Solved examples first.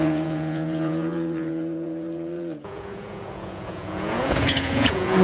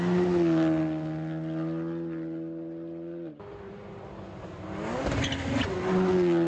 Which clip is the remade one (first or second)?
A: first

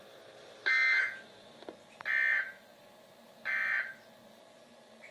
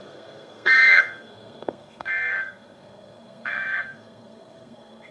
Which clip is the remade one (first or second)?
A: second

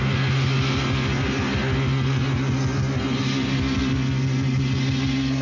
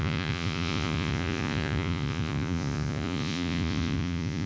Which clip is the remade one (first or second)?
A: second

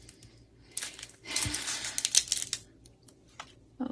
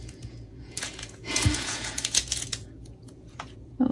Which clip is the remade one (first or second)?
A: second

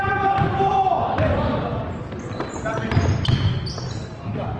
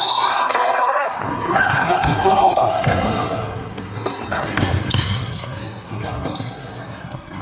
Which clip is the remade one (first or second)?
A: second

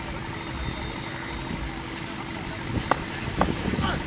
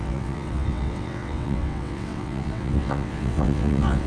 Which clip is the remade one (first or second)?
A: second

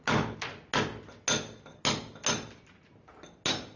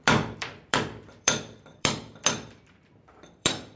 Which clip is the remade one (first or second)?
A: second